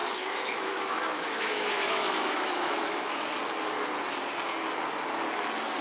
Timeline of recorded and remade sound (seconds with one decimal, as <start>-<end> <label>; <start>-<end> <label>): 0.0-3.4 remade; 3.4-5.8 recorded

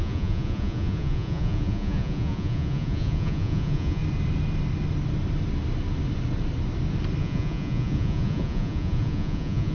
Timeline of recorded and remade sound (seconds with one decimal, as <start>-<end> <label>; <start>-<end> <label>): 0.0-4.0 remade; 4.0-7.2 recorded; 7.2-9.7 remade

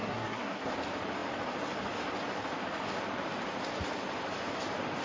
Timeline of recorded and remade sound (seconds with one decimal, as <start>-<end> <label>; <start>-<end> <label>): 0.0-0.7 remade; 0.7-5.0 recorded

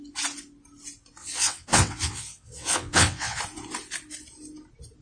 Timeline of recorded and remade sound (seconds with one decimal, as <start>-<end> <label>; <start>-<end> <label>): 0.0-1.2 recorded; 1.2-3.4 remade; 3.4-5.0 recorded

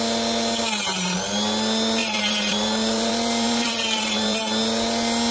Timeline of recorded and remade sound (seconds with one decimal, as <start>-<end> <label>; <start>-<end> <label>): 0.0-2.0 recorded; 2.0-4.4 remade; 4.4-5.3 recorded

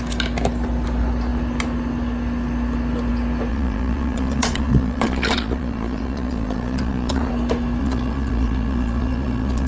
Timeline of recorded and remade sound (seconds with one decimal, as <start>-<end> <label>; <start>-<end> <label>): 0.0-3.5 recorded; 3.5-7.3 remade; 7.3-7.8 recorded; 7.8-9.7 remade

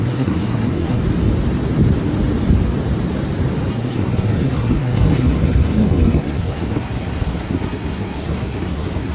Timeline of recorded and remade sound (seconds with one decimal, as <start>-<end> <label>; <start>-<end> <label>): 0.0-1.0 remade; 1.0-3.7 recorded; 3.7-9.1 remade